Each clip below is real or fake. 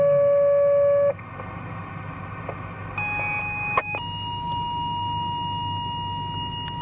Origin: real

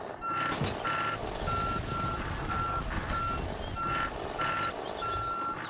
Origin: real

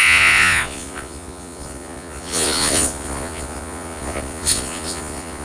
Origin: fake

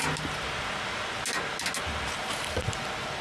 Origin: real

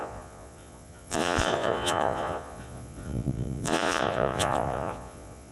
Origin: fake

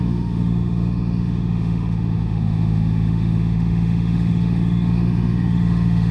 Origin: fake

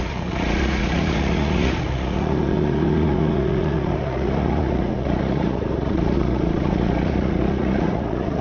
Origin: fake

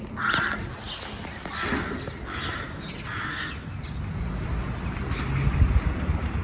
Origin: real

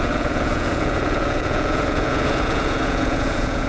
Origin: fake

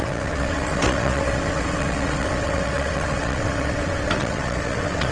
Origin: fake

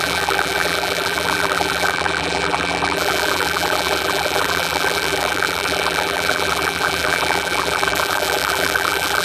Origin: fake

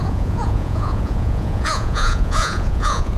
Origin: fake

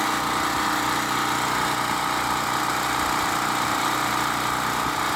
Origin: real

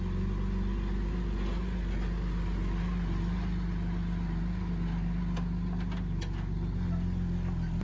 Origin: real